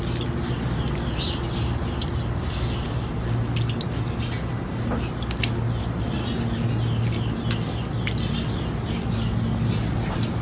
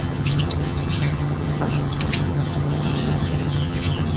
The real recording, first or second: first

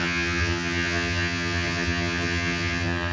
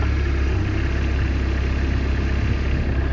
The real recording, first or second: second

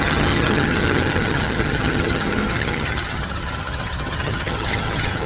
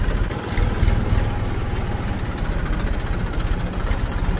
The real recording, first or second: second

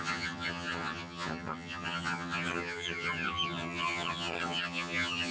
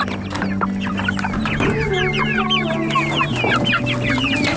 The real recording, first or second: second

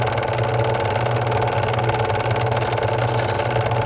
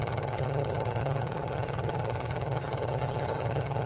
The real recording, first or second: first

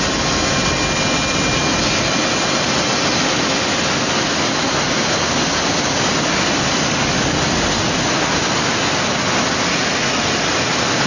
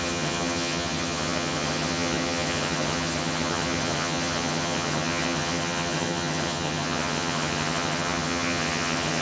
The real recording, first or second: first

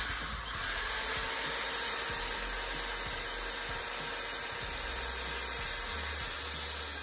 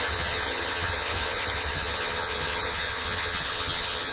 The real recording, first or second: first